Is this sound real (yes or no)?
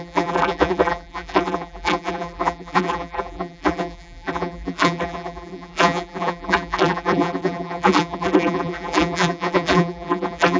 no